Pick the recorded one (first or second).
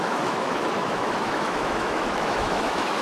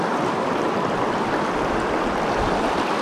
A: second